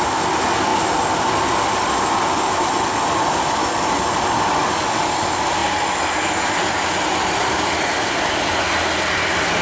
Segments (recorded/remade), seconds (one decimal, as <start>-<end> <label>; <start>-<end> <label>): 0.0-9.6 recorded